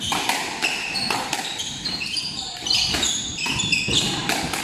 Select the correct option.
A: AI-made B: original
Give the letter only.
A